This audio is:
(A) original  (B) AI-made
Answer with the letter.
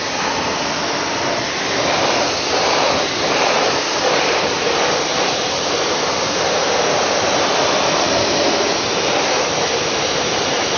B